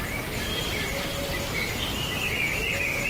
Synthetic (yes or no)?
no